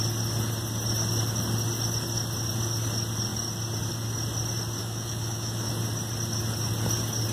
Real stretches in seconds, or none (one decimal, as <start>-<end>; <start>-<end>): 0.0-4.8; 5.7-7.3